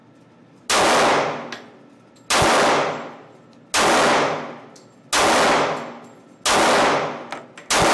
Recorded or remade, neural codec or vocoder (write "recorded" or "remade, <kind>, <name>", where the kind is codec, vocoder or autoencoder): recorded